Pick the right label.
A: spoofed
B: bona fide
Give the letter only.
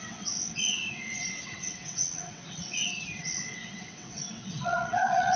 A